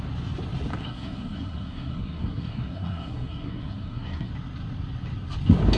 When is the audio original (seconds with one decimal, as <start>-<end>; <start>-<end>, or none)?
0.0-0.8; 4.3-5.8